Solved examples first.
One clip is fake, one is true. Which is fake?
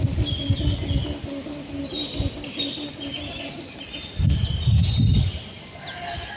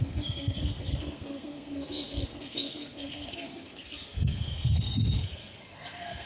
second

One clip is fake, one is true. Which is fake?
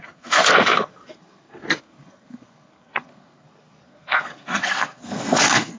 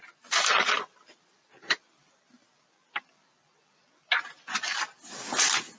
first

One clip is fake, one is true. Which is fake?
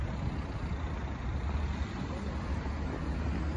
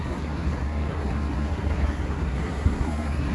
second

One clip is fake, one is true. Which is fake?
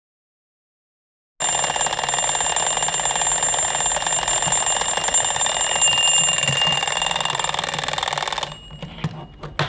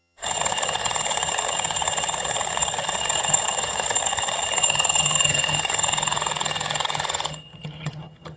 second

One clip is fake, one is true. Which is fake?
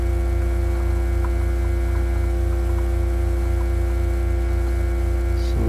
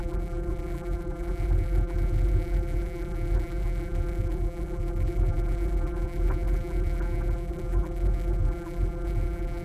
second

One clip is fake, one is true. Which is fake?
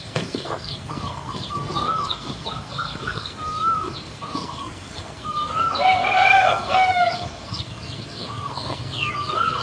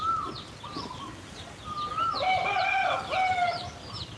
first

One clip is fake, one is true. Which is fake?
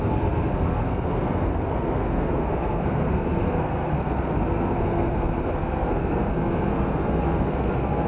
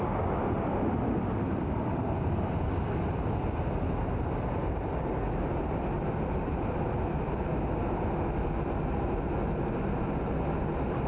first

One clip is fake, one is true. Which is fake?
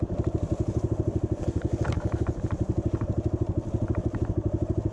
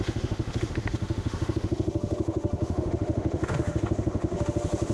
second